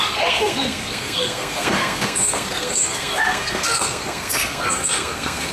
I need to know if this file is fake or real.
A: fake